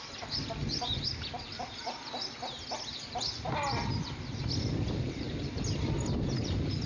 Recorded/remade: remade